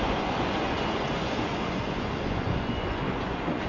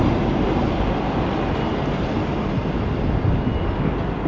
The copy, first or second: first